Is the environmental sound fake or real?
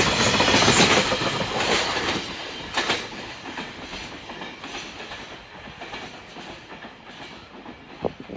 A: real